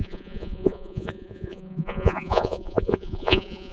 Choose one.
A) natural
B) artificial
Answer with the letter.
B